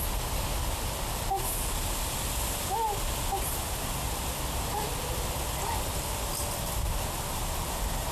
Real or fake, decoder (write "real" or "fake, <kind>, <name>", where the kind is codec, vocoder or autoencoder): real